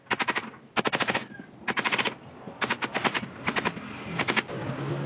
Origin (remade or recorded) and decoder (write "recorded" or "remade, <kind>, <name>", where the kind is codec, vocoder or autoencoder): recorded